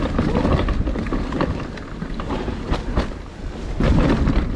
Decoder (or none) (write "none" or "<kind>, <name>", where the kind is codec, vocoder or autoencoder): vocoder, BigVGAN v2